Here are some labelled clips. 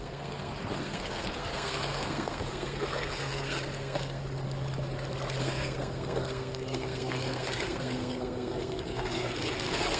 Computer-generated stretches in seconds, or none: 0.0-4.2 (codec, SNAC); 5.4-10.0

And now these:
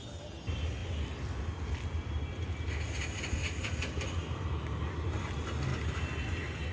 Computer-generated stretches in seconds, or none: none